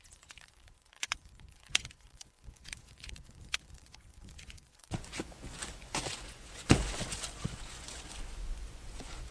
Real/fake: fake